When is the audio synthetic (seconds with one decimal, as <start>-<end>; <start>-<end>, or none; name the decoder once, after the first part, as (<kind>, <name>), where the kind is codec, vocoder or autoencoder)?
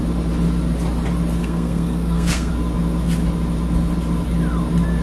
1.4-2.5 (codec, SNAC)